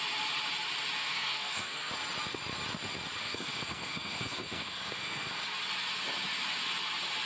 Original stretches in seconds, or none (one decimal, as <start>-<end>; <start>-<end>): 0.0-1.0; 1.9-3.2; 5.4-7.3

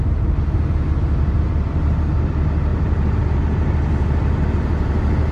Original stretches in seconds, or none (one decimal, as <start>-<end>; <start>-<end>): 0.0-2.7; 3.2-5.3

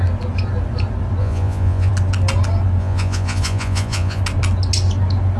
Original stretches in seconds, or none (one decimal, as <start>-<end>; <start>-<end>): 0.0-1.2; 1.9-2.8; 4.2-5.4

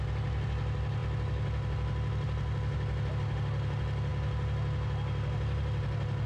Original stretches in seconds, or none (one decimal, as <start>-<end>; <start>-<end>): 0.0-6.3

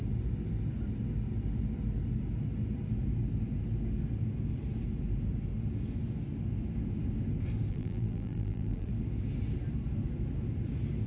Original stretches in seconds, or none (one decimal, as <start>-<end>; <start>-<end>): 0.0-7.7; 8.9-11.1

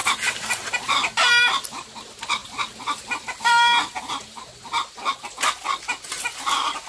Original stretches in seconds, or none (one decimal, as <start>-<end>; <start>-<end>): 0.0-6.9